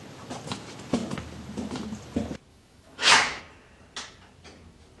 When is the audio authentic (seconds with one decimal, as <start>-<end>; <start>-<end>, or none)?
0.0-2.5; 3.4-5.0